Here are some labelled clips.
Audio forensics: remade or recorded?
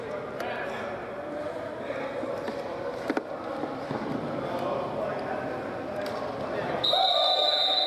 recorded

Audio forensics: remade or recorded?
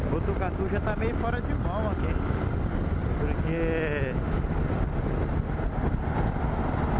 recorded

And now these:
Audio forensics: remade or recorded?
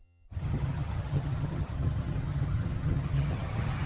remade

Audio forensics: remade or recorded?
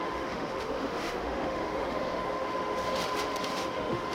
remade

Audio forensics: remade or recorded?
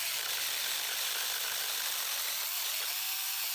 recorded